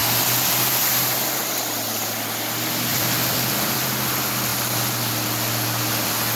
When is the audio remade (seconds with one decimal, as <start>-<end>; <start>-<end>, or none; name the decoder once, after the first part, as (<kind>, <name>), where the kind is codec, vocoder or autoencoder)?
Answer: 2.9-3.9 (vocoder, BigVGAN v2)